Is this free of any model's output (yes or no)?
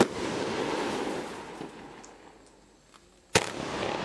yes